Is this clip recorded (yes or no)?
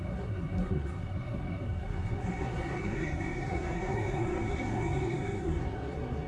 no